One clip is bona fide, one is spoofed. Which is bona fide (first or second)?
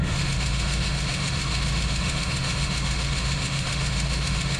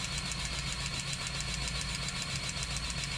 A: second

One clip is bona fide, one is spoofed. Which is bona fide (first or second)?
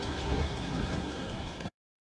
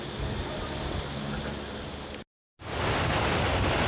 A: second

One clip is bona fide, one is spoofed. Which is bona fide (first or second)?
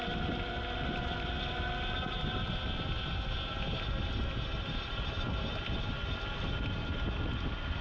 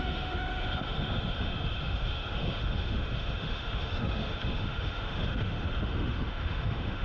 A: first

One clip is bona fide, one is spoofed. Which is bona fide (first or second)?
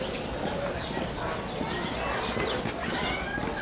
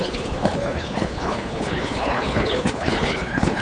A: first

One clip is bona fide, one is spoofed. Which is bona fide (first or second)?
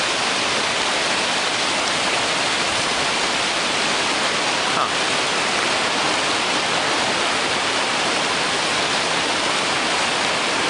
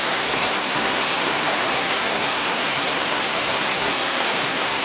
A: first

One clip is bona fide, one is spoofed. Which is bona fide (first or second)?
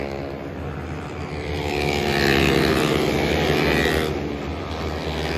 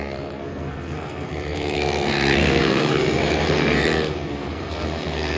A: first